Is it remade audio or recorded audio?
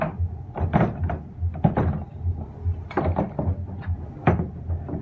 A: recorded